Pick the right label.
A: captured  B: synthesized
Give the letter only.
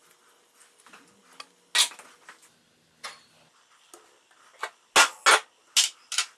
A